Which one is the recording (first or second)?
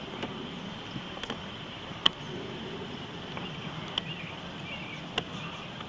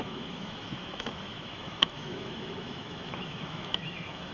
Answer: first